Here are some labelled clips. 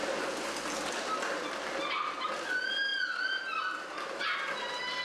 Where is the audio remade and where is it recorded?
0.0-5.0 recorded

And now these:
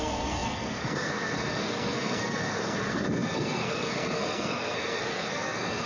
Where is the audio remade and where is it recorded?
0.0-5.9 remade

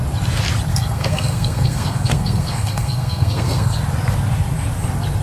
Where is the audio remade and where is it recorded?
0.0-0.7 recorded; 0.7-3.8 remade; 3.8-5.2 recorded